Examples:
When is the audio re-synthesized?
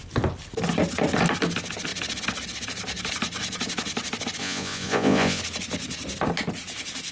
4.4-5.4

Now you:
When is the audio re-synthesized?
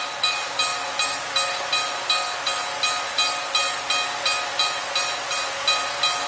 none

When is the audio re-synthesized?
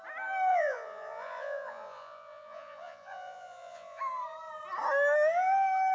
0.5-4.0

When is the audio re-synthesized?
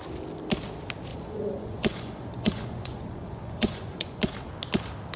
1.1-4.2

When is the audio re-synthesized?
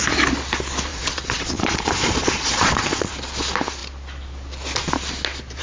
0.9-3.1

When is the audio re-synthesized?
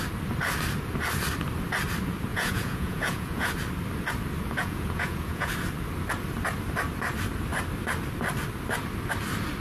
2.3-3.5; 4.6-5.5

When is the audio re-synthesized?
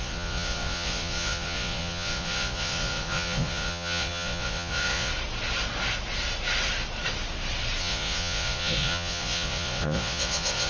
0.0-5.1; 7.8-10.7